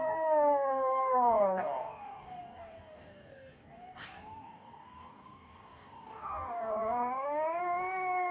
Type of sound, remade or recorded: remade